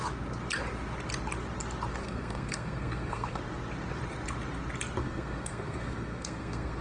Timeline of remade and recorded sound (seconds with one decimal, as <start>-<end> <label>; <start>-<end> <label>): 0.0-2.0 recorded; 2.0-3.4 remade; 3.4-5.0 recorded; 5.0-6.8 remade